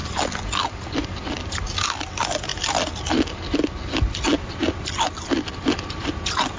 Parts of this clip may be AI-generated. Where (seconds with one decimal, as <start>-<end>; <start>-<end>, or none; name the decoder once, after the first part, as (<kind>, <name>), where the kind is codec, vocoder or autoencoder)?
none

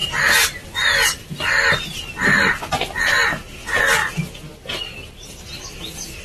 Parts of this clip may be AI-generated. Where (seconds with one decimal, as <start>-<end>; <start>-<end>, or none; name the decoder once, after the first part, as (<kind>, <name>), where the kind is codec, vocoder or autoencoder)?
none